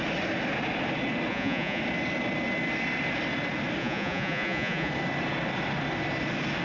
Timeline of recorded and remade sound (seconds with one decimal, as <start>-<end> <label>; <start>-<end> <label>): 0.0-1.3 recorded; 1.3-1.8 remade; 1.8-3.8 recorded; 3.8-4.9 remade; 4.9-6.6 recorded